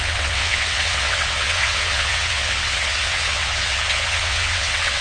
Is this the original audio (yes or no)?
no